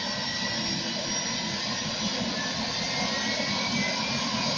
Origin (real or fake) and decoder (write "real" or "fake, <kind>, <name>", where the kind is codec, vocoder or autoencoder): real